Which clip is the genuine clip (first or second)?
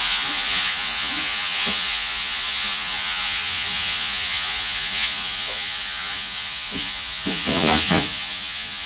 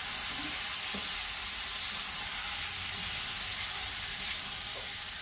second